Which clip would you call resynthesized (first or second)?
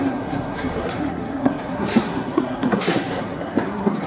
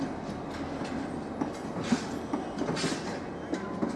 first